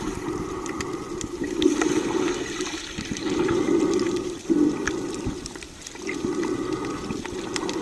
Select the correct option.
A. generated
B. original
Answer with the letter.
B